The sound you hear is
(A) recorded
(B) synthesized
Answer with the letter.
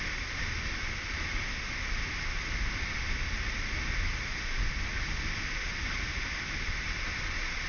A